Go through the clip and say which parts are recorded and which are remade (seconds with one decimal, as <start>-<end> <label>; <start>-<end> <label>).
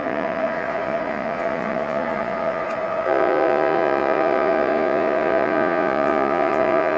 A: 0.0-7.0 remade